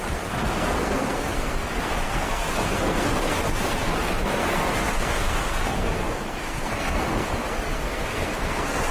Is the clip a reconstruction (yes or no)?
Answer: yes